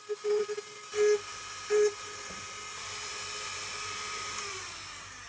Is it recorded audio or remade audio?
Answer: recorded